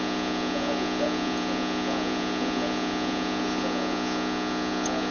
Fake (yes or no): yes